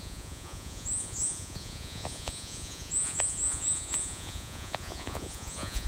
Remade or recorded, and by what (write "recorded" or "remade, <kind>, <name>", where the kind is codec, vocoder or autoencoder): remade, vocoder, Vocos